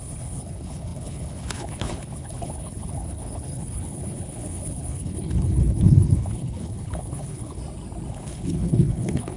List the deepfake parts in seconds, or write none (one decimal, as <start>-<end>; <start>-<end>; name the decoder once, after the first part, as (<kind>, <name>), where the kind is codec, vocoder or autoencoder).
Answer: 0.0-7.6 (codec, HILCodec); 8.1-9.4